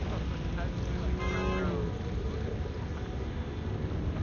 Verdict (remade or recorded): recorded